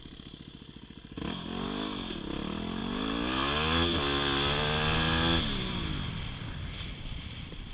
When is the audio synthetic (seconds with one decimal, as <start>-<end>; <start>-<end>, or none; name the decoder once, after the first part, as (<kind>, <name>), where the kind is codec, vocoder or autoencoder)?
none